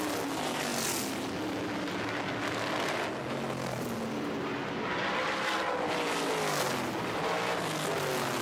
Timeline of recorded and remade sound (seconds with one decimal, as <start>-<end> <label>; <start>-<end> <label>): 0.0-8.4 recorded